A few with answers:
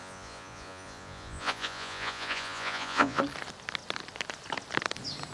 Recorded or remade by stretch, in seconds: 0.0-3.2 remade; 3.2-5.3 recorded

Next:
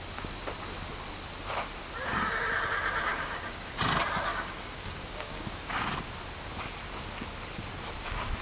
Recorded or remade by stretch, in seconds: 0.0-3.1 recorded; 3.1-3.7 remade; 3.7-4.3 recorded; 4.3-5.7 remade; 5.7-8.4 recorded